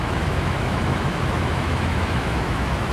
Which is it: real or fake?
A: fake